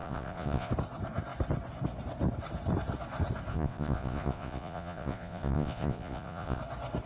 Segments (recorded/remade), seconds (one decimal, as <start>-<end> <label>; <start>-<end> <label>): 0.0-0.7 remade; 0.7-3.5 recorded; 3.5-6.6 remade; 6.6-7.1 recorded